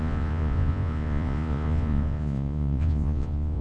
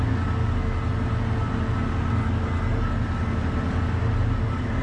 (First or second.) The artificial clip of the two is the first